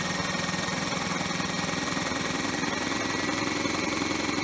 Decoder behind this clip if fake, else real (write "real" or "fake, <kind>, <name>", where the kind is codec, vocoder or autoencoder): real